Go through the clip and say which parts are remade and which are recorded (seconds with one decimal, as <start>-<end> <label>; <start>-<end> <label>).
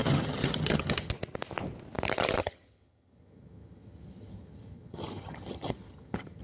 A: 0.0-1.1 remade; 1.1-2.4 recorded; 2.4-6.4 remade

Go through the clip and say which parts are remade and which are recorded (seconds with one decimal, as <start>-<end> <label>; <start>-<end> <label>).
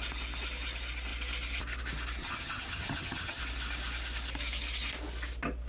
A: 0.0-2.2 recorded; 2.2-3.4 remade; 3.4-5.7 recorded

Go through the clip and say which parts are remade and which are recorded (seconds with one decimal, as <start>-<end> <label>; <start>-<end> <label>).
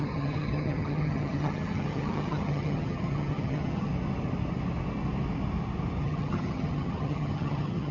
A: 0.0-3.9 remade; 3.9-6.0 recorded; 6.0-7.9 remade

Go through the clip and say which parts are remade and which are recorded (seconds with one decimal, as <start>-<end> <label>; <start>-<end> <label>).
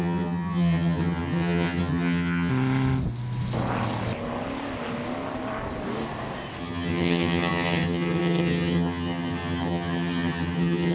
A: 0.0-2.5 remade; 2.5-6.6 recorded; 6.6-10.9 remade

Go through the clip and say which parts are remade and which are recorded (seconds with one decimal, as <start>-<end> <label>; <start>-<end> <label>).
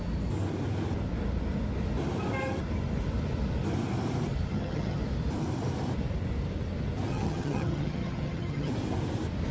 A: 0.0-4.5 recorded; 4.5-5.0 remade; 5.0-7.1 recorded; 7.1-8.7 remade; 8.7-9.5 recorded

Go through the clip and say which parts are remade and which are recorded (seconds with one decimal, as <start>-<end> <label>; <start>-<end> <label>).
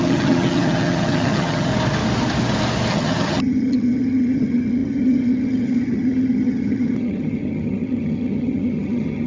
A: 0.0-1.7 remade; 1.7-2.9 recorded; 2.9-9.3 remade